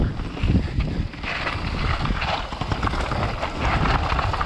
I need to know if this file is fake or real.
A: fake